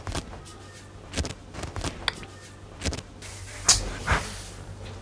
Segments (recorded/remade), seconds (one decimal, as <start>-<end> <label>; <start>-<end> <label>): 0.0-5.0 recorded